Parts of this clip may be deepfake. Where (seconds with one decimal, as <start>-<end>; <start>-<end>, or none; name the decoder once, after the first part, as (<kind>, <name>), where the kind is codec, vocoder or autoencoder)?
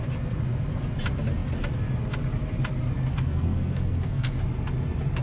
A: 3.1-4.3 (codec, SNAC)